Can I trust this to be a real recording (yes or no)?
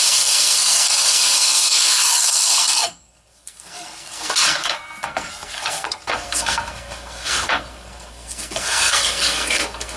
no